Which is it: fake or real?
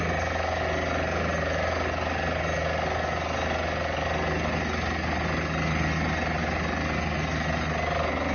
real